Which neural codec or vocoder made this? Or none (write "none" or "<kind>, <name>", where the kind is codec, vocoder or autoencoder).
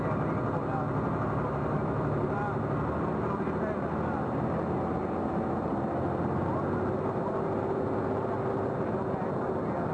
none